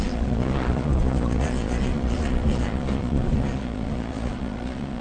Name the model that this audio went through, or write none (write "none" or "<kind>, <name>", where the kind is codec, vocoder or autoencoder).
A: vocoder, Vocos